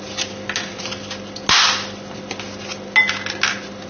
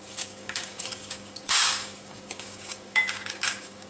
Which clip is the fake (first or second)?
second